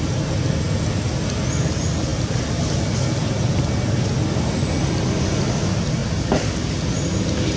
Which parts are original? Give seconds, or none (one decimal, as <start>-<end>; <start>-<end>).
0.0-7.6

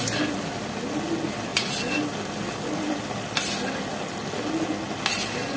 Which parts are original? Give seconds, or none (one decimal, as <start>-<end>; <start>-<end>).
0.0-5.6